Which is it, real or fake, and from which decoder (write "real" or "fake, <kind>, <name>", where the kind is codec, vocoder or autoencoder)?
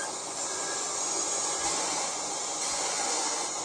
fake, vocoder, Vocos